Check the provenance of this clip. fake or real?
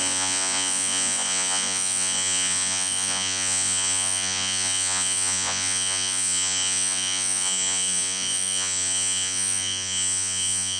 fake